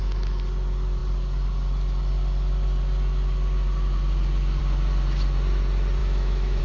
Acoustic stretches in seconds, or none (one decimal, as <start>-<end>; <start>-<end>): 0.0-6.0

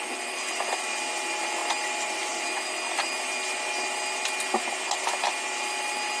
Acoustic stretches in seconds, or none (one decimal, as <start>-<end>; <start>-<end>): 0.0-6.2